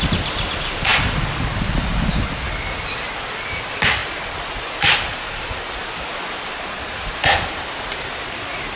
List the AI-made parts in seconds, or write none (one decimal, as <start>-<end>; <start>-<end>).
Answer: none